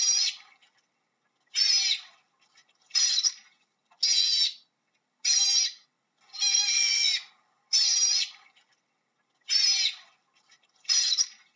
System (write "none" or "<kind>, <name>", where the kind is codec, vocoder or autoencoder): none